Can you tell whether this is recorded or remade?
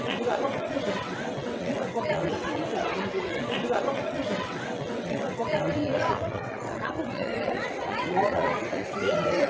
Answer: remade